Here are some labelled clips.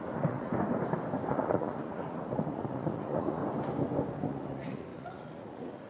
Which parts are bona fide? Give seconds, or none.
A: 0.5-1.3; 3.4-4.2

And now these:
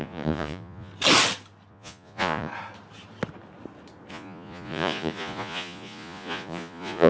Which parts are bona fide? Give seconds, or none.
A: 0.9-1.7; 2.5-4.1

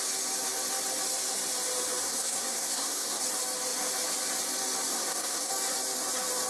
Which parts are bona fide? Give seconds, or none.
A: 0.0-2.0; 3.2-4.9; 5.5-6.5